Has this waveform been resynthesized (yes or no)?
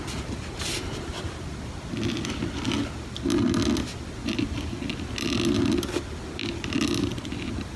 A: no